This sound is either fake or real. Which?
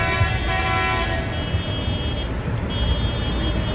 real